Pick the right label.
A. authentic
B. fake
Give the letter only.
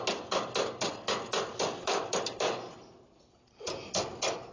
A